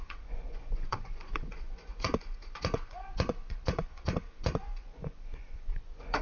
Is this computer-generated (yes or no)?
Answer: yes